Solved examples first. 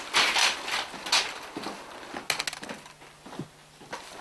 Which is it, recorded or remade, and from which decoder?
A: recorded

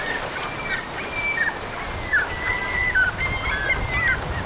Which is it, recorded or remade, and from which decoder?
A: recorded